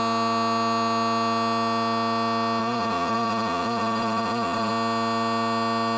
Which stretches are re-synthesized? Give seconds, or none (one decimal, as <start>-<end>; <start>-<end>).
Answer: 2.6-4.7